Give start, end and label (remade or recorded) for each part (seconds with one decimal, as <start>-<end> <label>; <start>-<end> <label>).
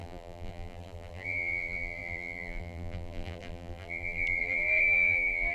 0.0-5.5 remade